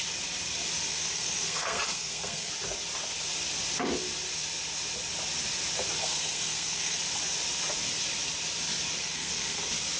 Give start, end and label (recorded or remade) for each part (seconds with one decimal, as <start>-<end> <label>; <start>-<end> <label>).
0.0-0.9 recorded; 0.9-2.5 remade; 2.5-6.0 recorded; 6.0-7.0 remade; 7.0-9.0 recorded; 9.0-9.6 remade; 9.6-10.0 recorded